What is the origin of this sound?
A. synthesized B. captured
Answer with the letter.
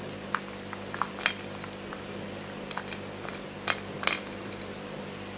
B